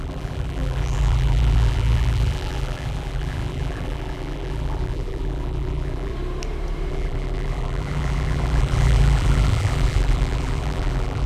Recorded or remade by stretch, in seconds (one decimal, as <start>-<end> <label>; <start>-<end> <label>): 0.0-6.1 remade; 6.1-6.9 recorded; 6.9-11.3 remade